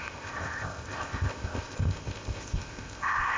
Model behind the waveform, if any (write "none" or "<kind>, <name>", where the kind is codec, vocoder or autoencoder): codec, ZipCodec